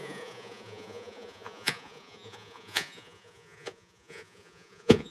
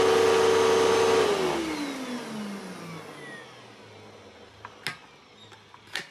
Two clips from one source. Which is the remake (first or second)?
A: first